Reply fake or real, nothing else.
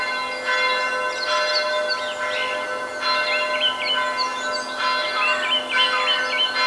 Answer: real